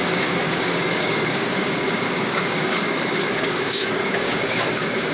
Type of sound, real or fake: fake